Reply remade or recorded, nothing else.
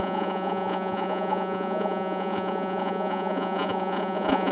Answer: remade